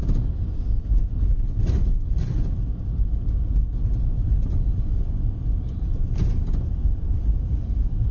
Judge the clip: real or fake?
real